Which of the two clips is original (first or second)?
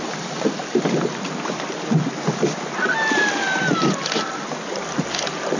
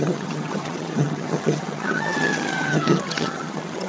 first